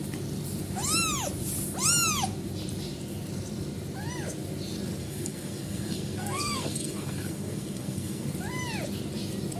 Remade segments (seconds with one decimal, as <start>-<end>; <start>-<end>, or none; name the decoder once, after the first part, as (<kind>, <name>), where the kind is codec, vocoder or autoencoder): 5.0-8.3 (codec, SNAC)